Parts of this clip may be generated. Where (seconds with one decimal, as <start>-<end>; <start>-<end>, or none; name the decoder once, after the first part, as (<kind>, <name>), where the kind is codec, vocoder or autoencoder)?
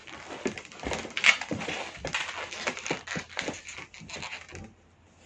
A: none